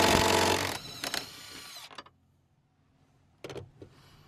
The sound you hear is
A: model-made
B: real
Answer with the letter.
B